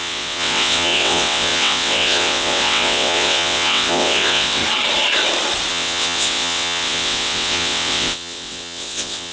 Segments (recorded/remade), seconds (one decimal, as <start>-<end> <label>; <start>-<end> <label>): 0.0-4.6 remade; 4.6-5.7 recorded; 5.7-9.3 remade